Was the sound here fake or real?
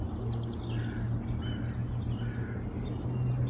real